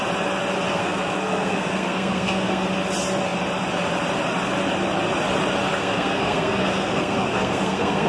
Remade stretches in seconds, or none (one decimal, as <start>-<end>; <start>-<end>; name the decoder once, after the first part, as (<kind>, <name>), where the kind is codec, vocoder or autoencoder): 0.7-2.6 (codec, SNAC); 5.8-8.1